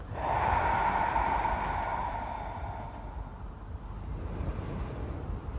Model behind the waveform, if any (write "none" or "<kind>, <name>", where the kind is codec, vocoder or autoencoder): none